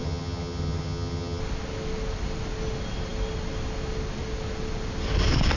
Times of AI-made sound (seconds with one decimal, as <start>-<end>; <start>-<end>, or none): 0.0-1.4